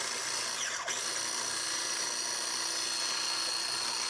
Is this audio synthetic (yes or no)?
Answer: no